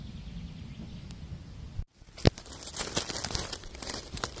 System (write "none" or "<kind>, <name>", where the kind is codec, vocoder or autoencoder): none